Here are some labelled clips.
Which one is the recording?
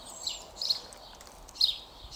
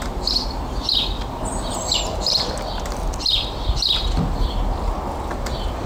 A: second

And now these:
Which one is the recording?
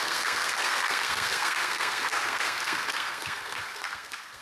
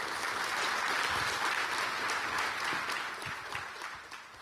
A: second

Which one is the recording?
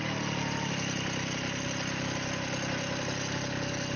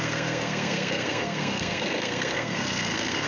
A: first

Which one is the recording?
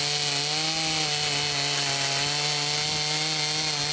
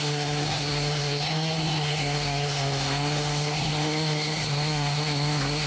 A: first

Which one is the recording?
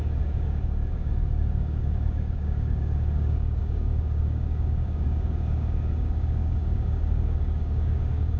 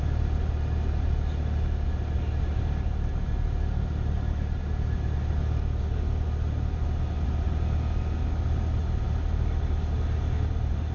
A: second